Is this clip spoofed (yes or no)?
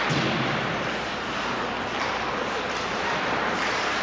no